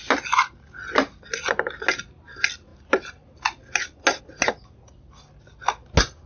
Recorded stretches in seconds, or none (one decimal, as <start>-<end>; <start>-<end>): 0.0-6.3